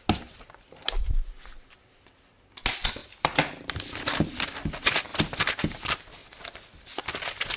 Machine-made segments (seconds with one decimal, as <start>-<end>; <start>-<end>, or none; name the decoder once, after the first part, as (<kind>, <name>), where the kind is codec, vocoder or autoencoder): 3.0-4.6 (vocoder, BigVGAN v2); 5.1-5.6; 6.2-6.9